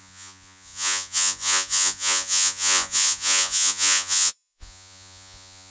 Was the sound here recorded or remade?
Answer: remade